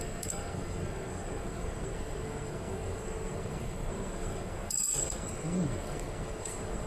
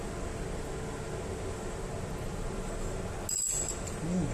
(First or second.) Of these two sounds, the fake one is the first